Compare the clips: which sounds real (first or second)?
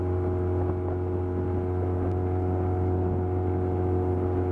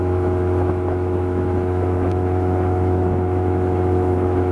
first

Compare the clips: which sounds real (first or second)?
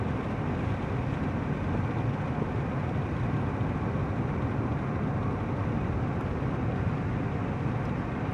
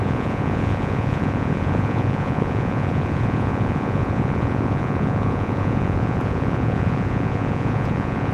first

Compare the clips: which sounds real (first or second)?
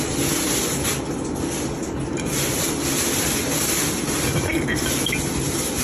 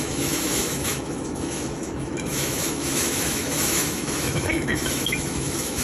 first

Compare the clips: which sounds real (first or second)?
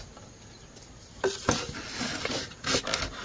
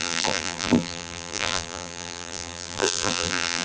first